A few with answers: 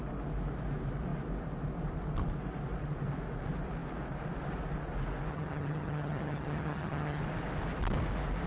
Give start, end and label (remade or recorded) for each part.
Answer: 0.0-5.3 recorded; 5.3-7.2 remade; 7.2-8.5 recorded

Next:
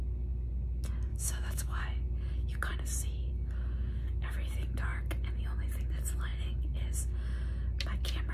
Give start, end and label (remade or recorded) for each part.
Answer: 0.0-1.1 recorded; 1.1-1.8 remade; 1.8-8.3 recorded

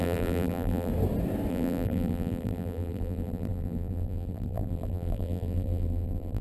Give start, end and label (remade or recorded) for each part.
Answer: 0.0-0.9 remade; 0.9-1.5 recorded; 1.5-6.4 remade

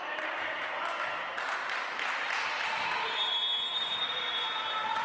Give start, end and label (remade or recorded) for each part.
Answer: 0.0-5.0 recorded

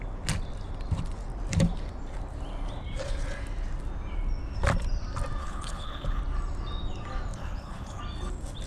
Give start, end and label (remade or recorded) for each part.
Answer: 0.0-5.4 recorded; 5.4-6.2 remade; 6.2-7.3 recorded; 7.3-8.0 remade; 8.0-8.7 recorded

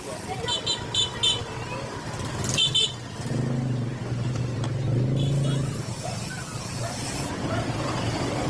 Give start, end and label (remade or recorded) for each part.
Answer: 0.0-4.0 recorded; 4.0-4.6 remade; 4.6-8.5 recorded

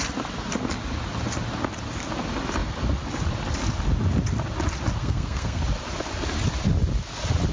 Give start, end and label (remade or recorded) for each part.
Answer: 0.0-5.0 recorded; 5.0-5.6 remade; 5.6-7.5 recorded

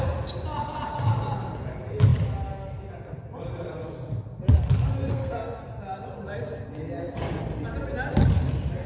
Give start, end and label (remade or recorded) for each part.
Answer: 0.0-5.1 recorded; 5.1-5.6 remade; 5.6-8.9 recorded